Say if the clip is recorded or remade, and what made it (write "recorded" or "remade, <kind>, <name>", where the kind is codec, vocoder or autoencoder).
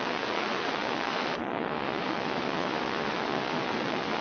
remade, vocoder, Vocos